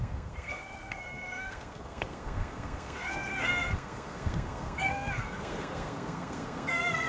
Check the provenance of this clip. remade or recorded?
remade